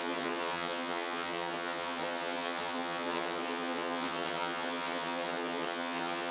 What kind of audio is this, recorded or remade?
remade